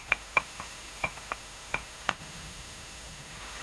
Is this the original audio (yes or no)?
no